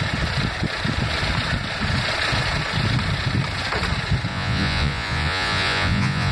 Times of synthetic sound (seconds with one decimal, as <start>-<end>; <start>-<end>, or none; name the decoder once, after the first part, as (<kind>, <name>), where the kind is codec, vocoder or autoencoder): 4.3-6.3 (vocoder, Vocos)